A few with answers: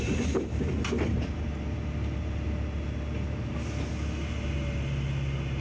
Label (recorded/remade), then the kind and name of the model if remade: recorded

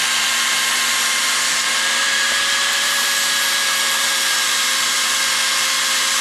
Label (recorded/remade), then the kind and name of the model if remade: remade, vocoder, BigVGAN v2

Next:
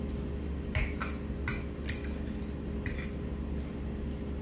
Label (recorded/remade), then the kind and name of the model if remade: recorded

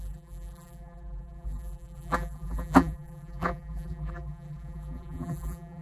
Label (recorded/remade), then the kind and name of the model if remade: remade, vocoder, BigVGAN v2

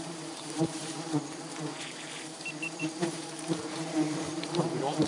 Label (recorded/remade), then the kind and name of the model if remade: remade, vocoder, BigVGAN v2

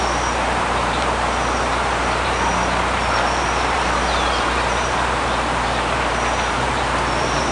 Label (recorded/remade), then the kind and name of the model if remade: remade, vocoder, BigVGAN v2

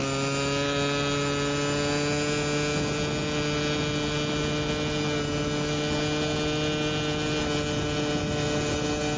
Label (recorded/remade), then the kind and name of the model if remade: recorded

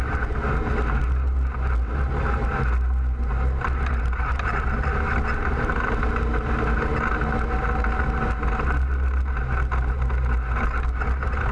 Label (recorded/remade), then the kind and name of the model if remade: recorded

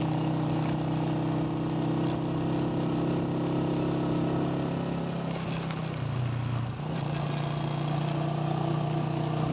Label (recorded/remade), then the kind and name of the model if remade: recorded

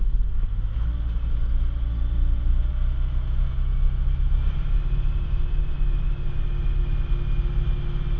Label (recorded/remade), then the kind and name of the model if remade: recorded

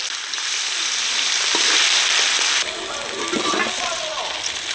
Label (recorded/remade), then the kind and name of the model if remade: remade, vocoder, BigVGAN v2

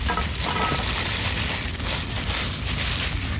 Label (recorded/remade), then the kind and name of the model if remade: recorded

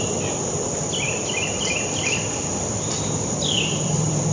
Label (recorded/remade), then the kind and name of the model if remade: remade, vocoder, BigVGAN v2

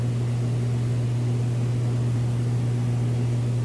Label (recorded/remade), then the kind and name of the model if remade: recorded